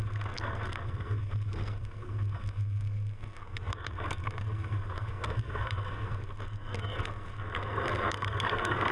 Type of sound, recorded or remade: remade